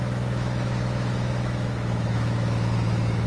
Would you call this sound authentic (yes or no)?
no